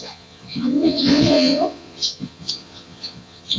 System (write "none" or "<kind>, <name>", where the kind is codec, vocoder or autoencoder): vocoder, Vocos